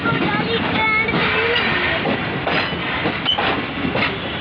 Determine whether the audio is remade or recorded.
recorded